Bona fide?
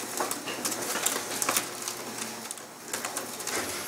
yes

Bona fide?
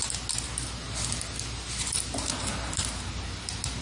yes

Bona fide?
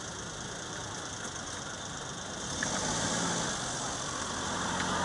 yes